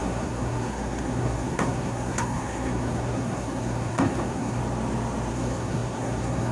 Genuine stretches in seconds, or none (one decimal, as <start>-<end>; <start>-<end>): 4.6-5.3